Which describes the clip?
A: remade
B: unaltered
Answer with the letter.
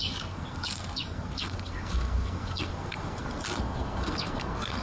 A